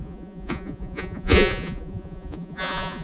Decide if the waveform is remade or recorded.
remade